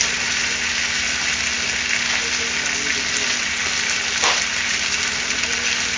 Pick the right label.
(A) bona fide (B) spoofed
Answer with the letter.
A